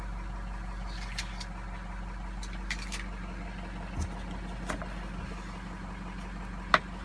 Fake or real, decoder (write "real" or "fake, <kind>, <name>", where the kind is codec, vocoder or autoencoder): real